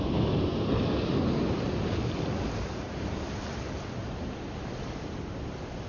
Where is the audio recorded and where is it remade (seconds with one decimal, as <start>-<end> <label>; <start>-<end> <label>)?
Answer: 0.0-5.9 recorded